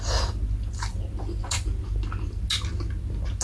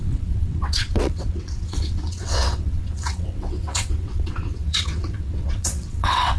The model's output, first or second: second